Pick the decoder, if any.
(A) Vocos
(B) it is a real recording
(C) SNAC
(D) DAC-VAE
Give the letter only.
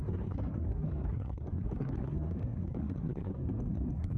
C